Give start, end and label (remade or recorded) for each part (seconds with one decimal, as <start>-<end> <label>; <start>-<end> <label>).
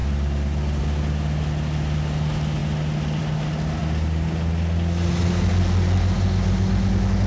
0.0-7.3 recorded